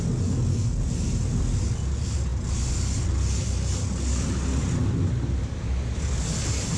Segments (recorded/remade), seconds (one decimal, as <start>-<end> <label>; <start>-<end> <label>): 0.0-6.8 recorded